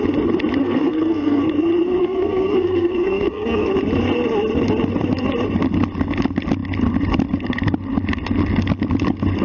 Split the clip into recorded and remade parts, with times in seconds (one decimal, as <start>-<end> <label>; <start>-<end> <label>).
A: 0.0-0.6 recorded; 0.6-1.5 remade; 1.5-2.0 recorded; 2.0-3.7 remade; 3.7-9.4 recorded

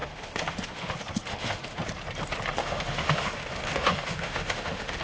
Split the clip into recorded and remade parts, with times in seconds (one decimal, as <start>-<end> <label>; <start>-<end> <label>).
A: 0.0-0.9 remade; 0.9-1.3 recorded; 1.3-1.8 remade; 1.8-2.6 recorded; 2.6-5.0 remade

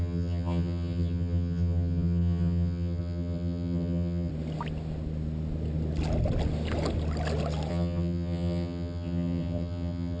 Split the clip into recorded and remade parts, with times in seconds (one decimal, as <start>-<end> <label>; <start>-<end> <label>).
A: 0.0-4.3 remade; 4.3-7.7 recorded; 7.7-10.2 remade

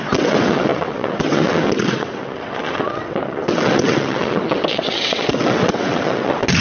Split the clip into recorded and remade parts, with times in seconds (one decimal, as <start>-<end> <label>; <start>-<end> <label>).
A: 0.0-6.6 remade